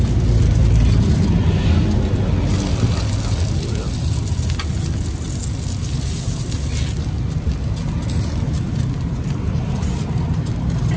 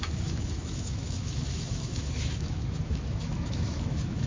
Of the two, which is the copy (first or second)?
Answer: second